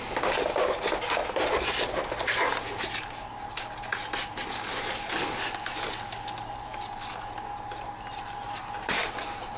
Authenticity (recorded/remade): recorded